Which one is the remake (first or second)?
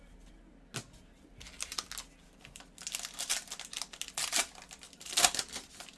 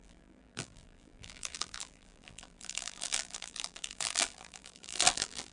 second